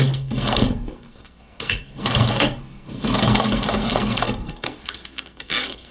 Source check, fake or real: fake